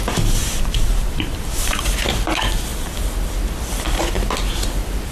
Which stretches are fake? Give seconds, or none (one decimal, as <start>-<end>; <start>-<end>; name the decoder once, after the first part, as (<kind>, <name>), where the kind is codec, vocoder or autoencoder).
0.4-1.8 (vocoder, BigVGAN v2)